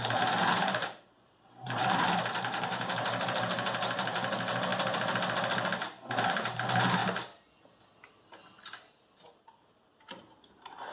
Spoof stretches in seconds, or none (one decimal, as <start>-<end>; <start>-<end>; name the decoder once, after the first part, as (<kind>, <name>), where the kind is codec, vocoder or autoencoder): 0.0-4.7 (vocoder, BigVGAN v2); 6.1-7.0; 7.8-10.9